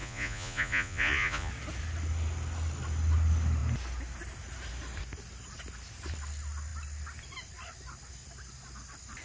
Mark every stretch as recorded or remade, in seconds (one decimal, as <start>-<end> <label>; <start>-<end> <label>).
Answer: 0.0-1.5 remade; 1.5-9.2 recorded